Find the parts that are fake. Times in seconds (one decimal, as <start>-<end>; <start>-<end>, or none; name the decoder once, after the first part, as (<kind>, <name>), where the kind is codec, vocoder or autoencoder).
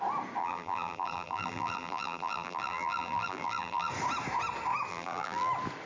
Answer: 0.4-3.9 (vocoder, BigVGAN v2); 4.9-5.5